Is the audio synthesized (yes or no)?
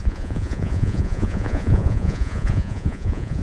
yes